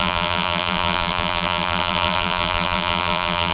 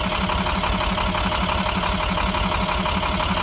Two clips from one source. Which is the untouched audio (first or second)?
second